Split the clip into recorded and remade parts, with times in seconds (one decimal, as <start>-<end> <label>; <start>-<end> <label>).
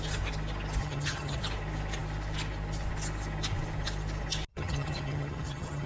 0.0-0.8 recorded; 0.8-1.4 remade; 1.4-4.5 recorded; 4.5-5.9 remade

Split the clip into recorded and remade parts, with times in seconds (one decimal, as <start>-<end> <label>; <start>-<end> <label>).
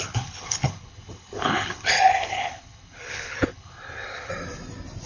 0.0-4.3 remade; 4.3-5.1 recorded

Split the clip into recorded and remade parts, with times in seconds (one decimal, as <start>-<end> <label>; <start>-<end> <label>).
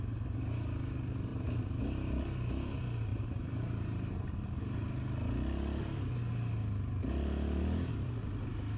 0.0-1.3 recorded; 1.3-1.8 remade; 1.8-3.1 recorded; 3.1-4.1 remade; 4.1-8.8 recorded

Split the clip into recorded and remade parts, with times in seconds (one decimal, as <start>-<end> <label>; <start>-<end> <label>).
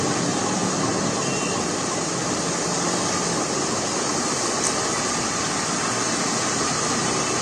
0.0-7.4 recorded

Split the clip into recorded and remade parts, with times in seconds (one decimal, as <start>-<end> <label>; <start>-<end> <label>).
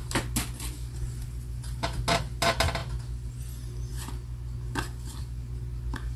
0.0-6.2 recorded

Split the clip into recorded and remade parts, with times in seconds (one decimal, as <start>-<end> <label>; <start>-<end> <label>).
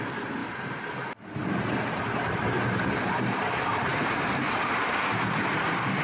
0.0-0.4 remade; 0.4-1.4 recorded; 1.4-6.0 remade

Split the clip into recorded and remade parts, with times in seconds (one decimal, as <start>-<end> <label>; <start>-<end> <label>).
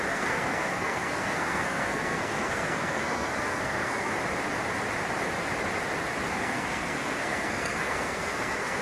0.0-4.1 remade; 4.1-6.3 recorded; 6.3-8.8 remade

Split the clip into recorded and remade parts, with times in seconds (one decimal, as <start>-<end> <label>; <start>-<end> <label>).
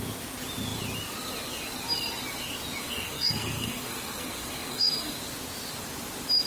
0.0-2.8 recorded; 2.8-5.1 remade; 5.1-6.5 recorded